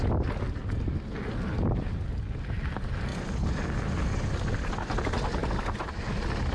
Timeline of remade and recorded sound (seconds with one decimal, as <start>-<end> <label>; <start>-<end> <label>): 0.0-5.4 recorded; 5.4-5.9 remade; 5.9-6.5 recorded